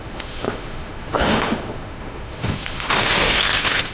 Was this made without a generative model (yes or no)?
no